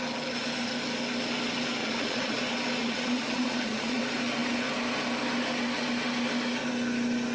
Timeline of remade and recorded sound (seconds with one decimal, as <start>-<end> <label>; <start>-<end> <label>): 0.0-1.8 recorded; 1.8-2.4 remade; 2.4-2.8 recorded; 2.8-4.0 remade; 4.0-7.3 recorded